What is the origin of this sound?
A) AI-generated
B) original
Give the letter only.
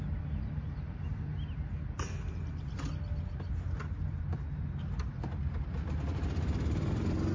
B